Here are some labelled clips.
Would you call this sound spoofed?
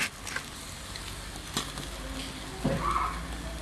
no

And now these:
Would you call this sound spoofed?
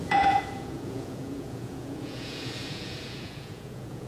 yes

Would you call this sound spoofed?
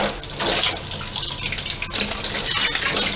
no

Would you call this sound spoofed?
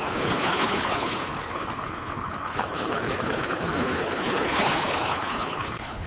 yes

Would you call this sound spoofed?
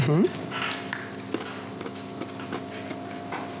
no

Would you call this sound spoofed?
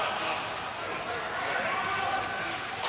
no